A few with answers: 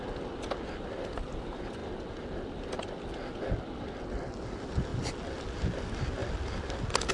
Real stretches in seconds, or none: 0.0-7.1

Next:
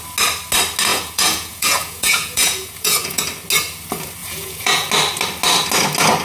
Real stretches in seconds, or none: 0.0-0.9; 3.2-4.2; 4.9-6.2

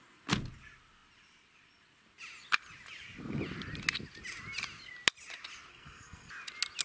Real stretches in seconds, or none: 0.0-5.7; 6.3-6.8

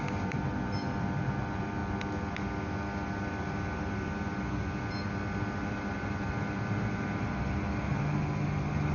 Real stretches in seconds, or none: 1.8-5.6